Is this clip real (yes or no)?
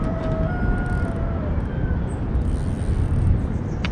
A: yes